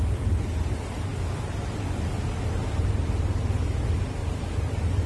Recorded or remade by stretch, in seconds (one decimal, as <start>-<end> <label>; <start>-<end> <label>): 0.0-4.2 recorded; 4.2-5.1 remade